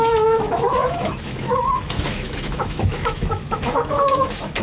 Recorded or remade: remade